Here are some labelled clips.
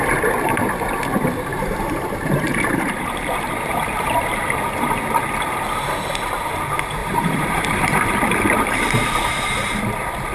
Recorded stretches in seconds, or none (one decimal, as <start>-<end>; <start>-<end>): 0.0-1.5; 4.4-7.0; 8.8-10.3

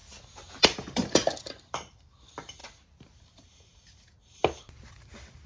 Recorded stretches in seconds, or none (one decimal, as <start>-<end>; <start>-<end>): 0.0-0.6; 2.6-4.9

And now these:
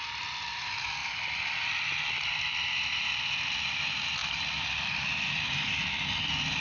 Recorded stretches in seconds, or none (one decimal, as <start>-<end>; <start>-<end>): 0.0-1.0; 3.2-4.2; 5.0-6.6

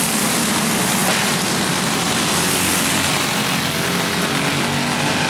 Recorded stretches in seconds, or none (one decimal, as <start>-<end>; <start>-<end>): 0.0-5.3